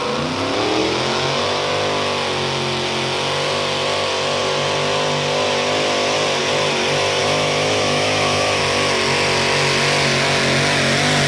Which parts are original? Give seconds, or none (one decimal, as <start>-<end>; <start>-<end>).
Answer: 0.0-0.8; 1.7-7.2; 8.6-11.3